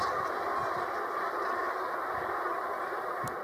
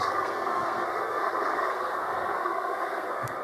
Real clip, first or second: first